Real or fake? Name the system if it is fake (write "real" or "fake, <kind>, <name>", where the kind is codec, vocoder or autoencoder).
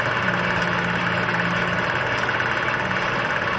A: real